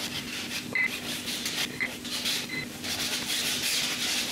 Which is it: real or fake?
real